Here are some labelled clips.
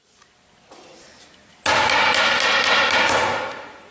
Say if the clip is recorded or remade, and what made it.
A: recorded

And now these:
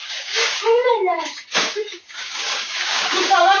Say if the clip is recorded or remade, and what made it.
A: remade, codec, DAC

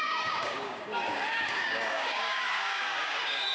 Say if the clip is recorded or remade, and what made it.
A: remade, codec, DAC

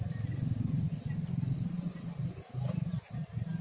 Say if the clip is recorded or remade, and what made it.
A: recorded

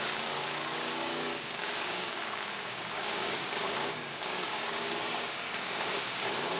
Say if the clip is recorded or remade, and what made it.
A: remade, codec, DAC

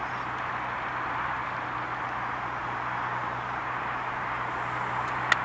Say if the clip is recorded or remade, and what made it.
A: recorded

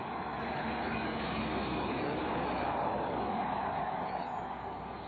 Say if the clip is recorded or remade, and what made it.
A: remade, codec, DAC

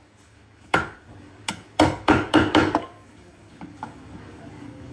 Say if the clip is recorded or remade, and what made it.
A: remade, codec, DAC